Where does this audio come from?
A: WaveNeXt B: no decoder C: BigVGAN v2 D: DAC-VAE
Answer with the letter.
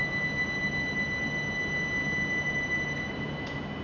B